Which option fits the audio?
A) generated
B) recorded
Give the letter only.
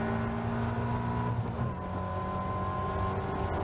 B